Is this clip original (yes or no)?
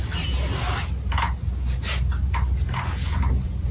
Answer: yes